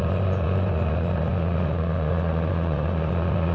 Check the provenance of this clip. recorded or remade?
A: remade